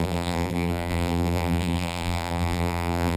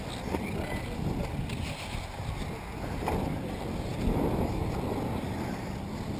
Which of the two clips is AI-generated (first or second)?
first